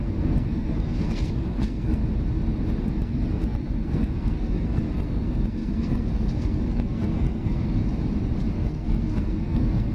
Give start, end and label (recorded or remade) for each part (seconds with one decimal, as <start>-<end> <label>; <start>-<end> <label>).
0.0-2.0 remade; 2.0-2.8 recorded; 2.8-7.8 remade; 7.8-8.5 recorded; 8.5-9.9 remade